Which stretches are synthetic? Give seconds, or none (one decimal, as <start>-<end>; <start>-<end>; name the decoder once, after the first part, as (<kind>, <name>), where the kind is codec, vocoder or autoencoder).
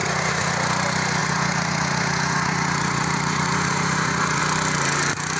0.0-0.5 (vocoder, Vocos); 1.2-4.4